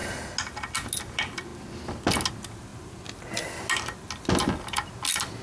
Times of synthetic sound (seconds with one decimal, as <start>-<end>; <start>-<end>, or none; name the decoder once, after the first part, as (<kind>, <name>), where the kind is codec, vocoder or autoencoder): none